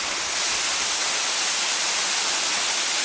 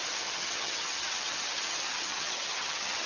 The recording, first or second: first